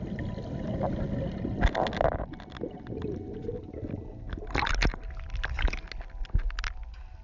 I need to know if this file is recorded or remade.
recorded